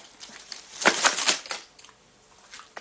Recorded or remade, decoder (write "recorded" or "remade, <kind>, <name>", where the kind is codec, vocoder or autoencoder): recorded